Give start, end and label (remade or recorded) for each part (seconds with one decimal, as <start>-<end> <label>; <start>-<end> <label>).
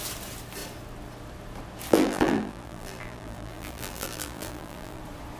0.0-1.9 recorded; 1.9-5.0 remade; 5.0-5.4 recorded